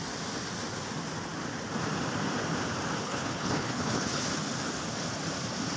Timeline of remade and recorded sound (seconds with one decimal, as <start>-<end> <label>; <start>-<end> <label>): 0.0-3.0 recorded; 3.0-4.3 remade; 4.3-5.8 recorded